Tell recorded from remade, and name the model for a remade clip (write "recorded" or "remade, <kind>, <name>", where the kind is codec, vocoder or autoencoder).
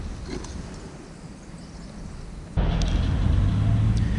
recorded